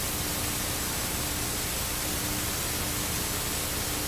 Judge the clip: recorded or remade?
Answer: recorded